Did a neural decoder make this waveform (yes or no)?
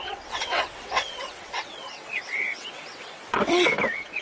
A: yes